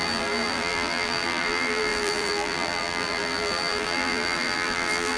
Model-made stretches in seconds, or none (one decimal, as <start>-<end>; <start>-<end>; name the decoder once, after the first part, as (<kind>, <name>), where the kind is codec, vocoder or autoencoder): 0.0-5.2 (vocoder, BigVGAN v2)